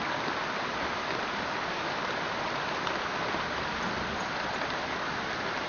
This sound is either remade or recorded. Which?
recorded